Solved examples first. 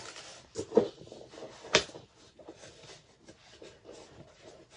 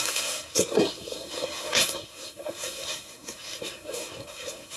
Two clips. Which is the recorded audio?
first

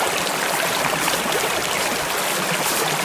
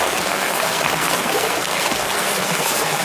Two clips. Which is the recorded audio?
first